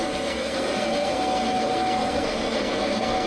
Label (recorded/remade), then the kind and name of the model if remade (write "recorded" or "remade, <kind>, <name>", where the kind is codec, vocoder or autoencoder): remade, codec, SNAC